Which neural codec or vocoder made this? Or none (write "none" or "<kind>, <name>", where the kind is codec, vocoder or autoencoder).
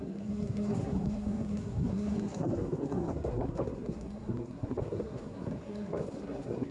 codec, SNAC